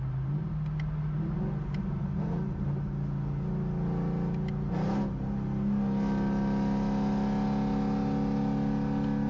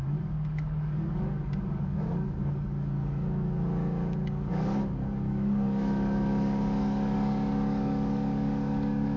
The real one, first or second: first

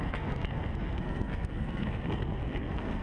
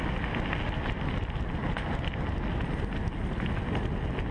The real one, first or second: second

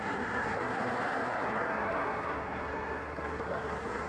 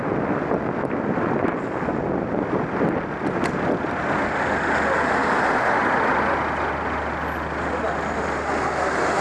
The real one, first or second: second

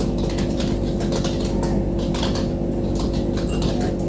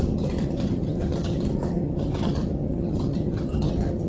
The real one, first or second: first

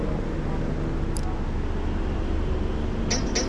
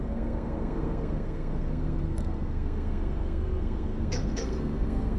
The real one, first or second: first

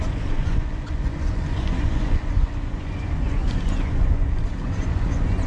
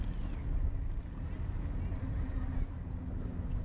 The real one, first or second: second